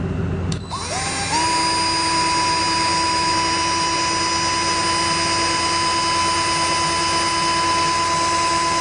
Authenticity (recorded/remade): recorded